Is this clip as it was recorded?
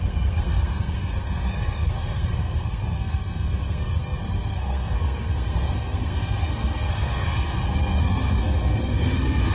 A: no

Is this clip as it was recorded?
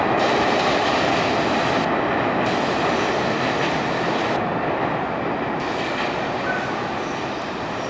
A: yes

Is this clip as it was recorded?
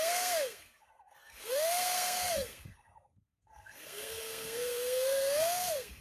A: no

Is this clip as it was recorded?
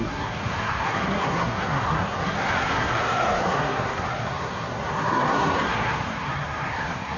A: no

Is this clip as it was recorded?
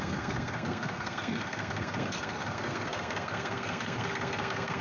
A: no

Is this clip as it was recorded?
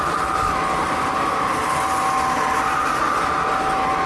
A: yes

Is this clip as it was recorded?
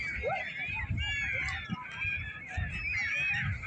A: yes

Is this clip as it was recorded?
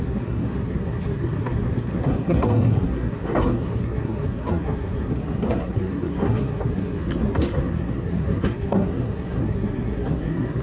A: no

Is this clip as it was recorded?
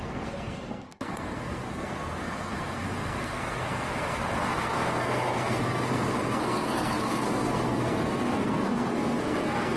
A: no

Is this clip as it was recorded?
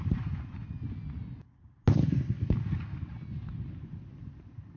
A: yes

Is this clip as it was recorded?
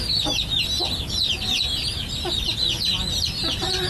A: yes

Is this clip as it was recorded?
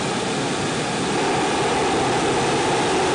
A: yes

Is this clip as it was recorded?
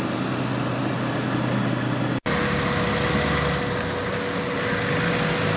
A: yes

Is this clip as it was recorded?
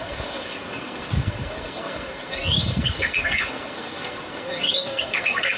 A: no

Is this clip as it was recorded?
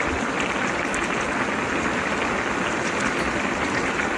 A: yes